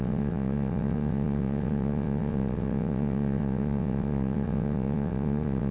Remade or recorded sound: remade